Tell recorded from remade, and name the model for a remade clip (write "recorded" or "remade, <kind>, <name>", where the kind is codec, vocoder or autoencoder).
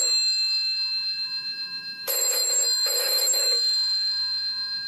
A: remade, autoencoder, DAC-VAE